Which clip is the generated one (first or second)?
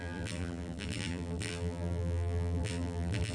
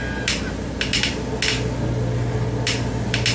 first